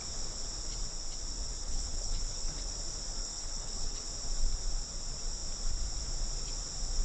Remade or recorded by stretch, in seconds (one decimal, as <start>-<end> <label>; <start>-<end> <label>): 0.0-1.6 recorded; 1.6-2.7 remade; 2.7-3.2 recorded; 3.2-4.1 remade; 4.1-7.0 recorded

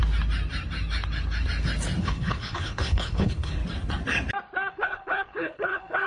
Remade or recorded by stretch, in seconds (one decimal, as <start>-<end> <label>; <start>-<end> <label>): 0.0-2.0 recorded; 2.0-3.6 remade; 3.6-4.7 recorded; 4.7-6.1 remade